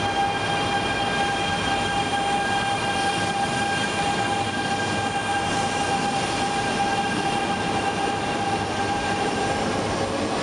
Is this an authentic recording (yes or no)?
yes